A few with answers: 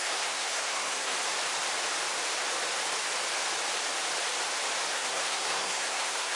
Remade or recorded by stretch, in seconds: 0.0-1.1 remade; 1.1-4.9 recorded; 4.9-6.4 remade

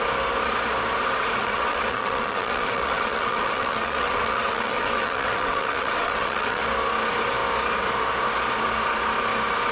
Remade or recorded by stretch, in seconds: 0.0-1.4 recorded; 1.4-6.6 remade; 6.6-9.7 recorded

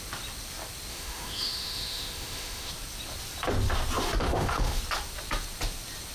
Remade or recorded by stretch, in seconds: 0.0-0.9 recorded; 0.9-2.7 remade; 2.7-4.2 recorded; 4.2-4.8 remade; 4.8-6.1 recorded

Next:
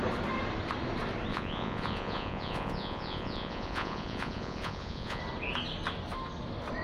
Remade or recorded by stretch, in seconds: 0.0-1.3 recorded; 1.3-5.2 remade; 5.2-6.8 recorded